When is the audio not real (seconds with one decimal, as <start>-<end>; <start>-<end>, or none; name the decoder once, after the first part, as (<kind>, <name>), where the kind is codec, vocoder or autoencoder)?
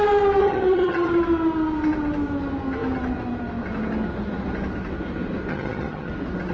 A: 0.4-1.1 (vocoder, HiFi-GAN); 5.5-6.1